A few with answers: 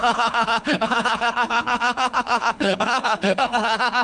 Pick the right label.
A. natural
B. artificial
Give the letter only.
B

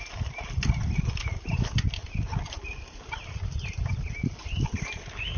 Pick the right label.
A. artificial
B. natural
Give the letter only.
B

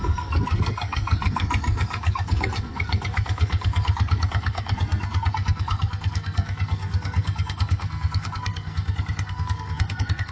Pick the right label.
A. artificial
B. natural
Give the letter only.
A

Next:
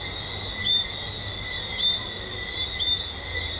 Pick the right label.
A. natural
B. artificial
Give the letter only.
A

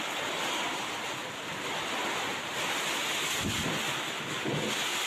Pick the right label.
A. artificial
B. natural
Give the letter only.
B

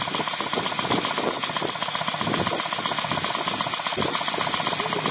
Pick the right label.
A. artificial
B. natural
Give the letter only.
B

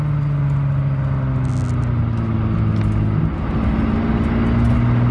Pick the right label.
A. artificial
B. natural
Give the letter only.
B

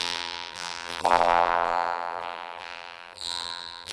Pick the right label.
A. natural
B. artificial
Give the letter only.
B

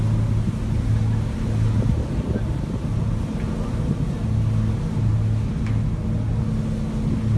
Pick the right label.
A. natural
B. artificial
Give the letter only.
A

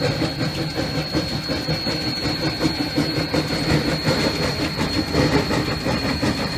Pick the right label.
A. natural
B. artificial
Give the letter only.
A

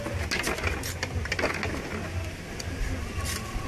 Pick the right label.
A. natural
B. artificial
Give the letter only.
A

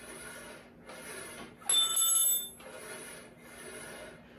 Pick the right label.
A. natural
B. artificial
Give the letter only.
A